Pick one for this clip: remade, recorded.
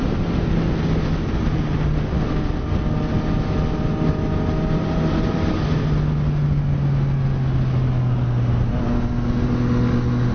recorded